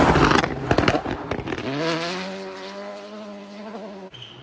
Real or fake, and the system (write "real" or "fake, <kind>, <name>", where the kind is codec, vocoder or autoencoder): real